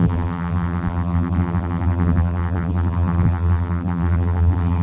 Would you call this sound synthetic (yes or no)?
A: yes